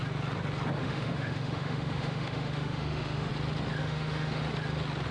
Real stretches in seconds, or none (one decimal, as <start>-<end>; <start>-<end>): 0.0-0.8; 3.3-3.8; 4.4-5.1